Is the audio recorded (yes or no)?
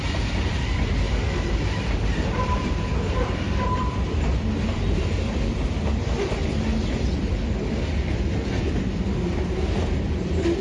no